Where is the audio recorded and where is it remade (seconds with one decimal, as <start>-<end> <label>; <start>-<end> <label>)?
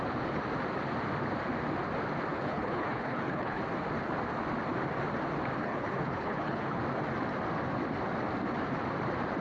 0.0-2.3 recorded; 2.3-3.6 remade; 3.6-5.6 recorded; 5.6-6.8 remade; 6.8-9.4 recorded